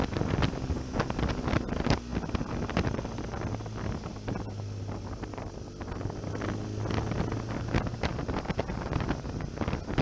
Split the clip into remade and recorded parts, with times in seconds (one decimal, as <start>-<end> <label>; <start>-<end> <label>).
0.0-10.0 recorded